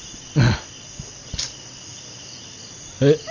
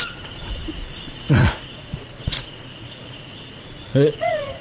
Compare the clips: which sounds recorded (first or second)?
first